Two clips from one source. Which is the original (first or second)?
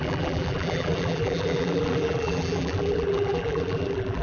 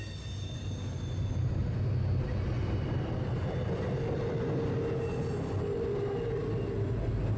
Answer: second